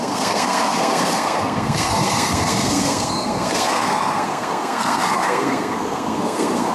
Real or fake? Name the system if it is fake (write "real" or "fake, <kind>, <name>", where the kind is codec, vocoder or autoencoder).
fake, codec, SNAC